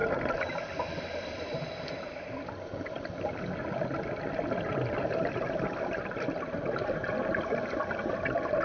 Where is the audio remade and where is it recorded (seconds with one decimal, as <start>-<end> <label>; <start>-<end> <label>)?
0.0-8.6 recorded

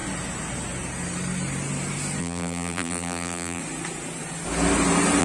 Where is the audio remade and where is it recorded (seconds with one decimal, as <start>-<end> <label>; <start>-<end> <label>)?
0.0-2.2 recorded; 2.2-3.6 remade; 3.6-5.2 recorded

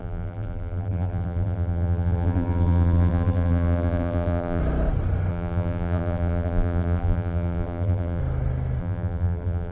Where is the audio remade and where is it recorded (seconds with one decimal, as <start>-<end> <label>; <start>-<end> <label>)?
0.0-4.6 remade; 4.6-5.3 recorded; 5.3-8.2 remade; 8.2-8.8 recorded; 8.8-9.7 remade

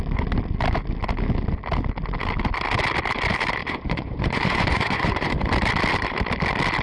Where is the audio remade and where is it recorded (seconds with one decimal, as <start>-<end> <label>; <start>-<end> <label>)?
0.0-3.6 recorded; 3.6-5.3 remade; 5.3-6.8 recorded